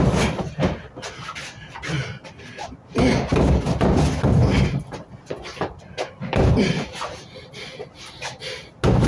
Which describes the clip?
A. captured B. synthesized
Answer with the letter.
A